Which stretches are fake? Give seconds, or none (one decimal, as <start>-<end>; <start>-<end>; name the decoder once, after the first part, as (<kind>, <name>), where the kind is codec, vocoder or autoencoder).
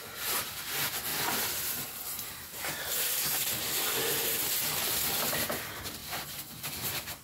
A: none